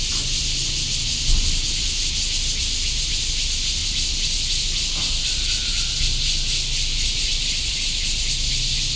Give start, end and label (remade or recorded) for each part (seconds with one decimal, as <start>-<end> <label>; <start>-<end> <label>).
0.0-9.0 recorded